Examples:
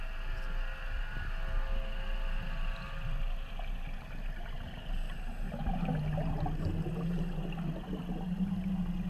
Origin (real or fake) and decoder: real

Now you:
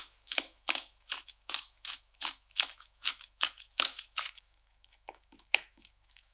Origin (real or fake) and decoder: fake, autoencoder, DAC-VAE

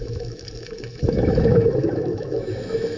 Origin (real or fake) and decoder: fake, autoencoder, DAC-VAE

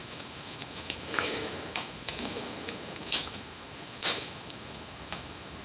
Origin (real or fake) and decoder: fake, autoencoder, DAC-VAE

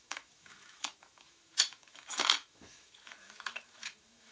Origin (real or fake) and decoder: fake, autoencoder, DAC-VAE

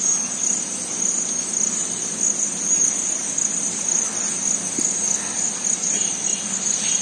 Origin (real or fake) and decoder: real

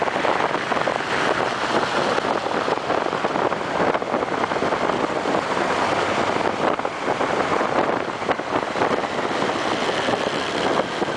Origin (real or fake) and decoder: real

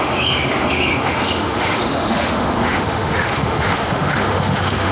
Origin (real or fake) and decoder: fake, autoencoder, DAC-VAE